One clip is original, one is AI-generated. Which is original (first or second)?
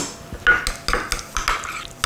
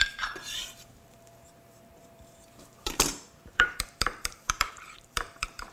first